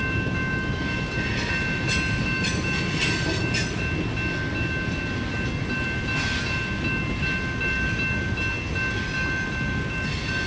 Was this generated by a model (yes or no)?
no